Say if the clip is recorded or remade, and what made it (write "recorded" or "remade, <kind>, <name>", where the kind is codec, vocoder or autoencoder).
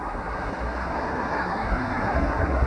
remade, codec, SNAC